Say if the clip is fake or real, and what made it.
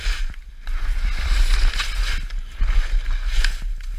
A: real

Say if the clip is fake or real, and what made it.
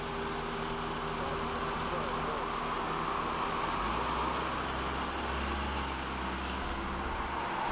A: real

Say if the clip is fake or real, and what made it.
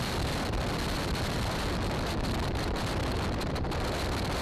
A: fake, vocoder, BigVGAN v2